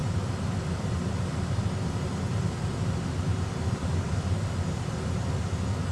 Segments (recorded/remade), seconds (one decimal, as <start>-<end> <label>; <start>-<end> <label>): 0.0-3.8 recorded; 3.8-4.3 remade; 4.3-5.9 recorded